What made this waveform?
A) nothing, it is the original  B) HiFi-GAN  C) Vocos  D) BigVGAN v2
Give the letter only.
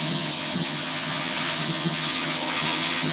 B